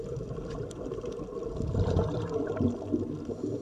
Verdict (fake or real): real